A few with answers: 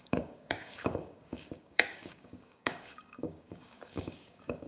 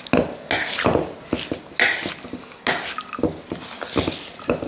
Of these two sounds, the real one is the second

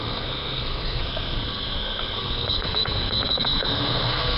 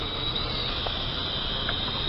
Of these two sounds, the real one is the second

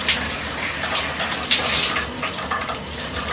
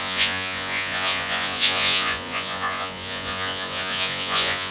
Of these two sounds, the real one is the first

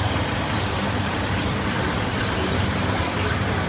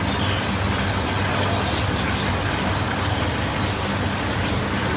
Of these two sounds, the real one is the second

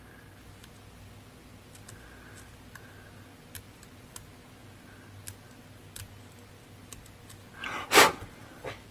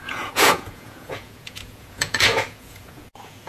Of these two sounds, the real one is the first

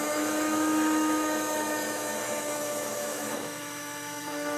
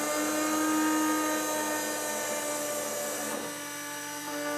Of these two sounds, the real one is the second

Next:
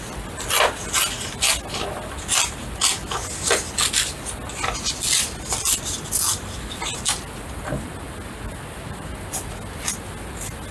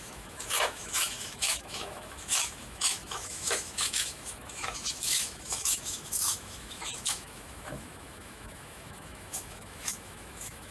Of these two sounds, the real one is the first